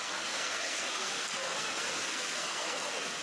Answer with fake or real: fake